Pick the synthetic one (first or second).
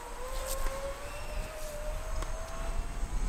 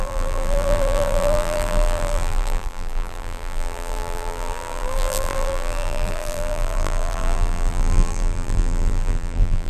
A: second